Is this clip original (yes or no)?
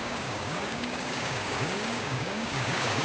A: no